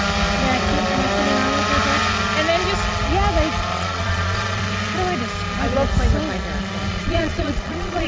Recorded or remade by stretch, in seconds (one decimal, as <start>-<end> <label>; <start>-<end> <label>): 0.0-3.7 recorded; 3.7-4.6 remade; 4.6-6.9 recorded; 6.9-8.1 remade